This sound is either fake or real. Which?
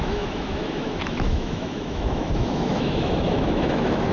fake